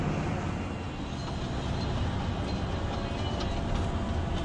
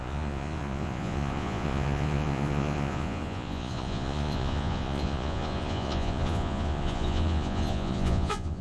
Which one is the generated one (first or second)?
second